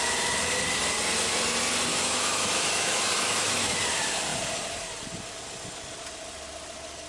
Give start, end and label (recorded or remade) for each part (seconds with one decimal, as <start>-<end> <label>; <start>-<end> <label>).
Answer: 0.0-1.9 recorded; 1.9-3.8 remade; 3.8-7.1 recorded